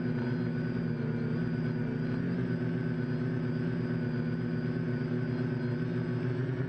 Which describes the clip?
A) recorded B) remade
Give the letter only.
A